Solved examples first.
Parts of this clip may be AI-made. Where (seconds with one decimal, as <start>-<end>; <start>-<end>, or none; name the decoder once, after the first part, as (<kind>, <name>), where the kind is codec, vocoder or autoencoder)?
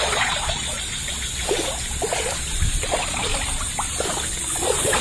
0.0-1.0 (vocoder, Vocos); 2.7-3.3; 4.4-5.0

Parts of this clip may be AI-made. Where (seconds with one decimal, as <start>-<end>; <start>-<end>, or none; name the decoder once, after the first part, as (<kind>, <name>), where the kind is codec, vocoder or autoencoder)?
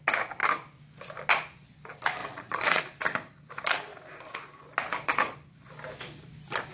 2.2-2.8 (vocoder, Vocos)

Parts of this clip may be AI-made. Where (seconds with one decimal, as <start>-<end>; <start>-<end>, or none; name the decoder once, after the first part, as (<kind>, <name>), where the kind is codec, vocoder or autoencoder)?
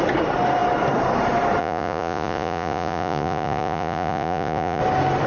1.6-4.8 (vocoder, Vocos)